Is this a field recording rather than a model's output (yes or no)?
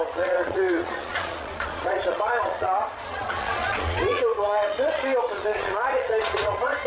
no